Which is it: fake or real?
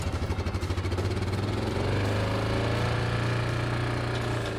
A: real